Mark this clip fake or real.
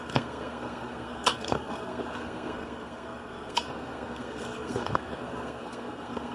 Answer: fake